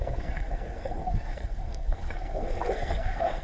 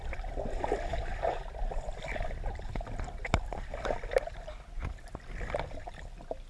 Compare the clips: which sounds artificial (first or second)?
first